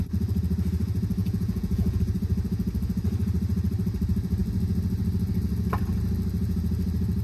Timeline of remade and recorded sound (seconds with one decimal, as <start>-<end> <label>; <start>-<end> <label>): 0.0-1.2 recorded; 1.2-2.0 remade; 2.0-7.2 recorded